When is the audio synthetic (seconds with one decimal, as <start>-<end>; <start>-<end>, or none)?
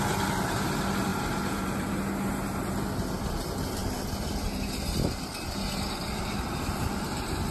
none